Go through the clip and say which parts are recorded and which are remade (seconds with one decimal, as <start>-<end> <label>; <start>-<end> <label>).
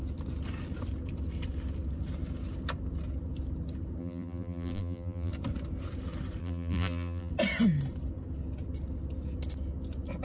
0.0-4.0 recorded; 4.0-5.3 remade; 5.3-6.4 recorded; 6.4-7.3 remade; 7.3-10.2 recorded